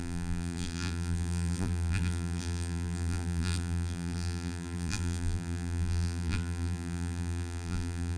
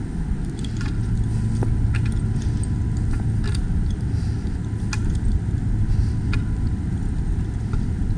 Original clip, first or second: second